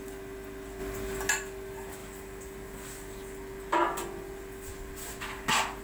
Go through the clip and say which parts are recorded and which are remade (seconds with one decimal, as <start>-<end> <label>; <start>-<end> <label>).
0.0-5.8 recorded